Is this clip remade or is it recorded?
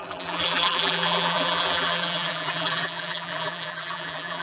remade